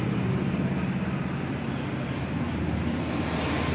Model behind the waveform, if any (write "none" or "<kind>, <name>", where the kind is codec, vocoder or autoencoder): none